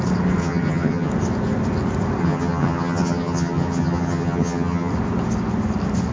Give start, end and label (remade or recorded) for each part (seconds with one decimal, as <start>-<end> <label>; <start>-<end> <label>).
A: 0.0-0.4 recorded; 0.4-1.1 remade; 1.1-2.2 recorded; 2.2-4.9 remade; 4.9-6.1 recorded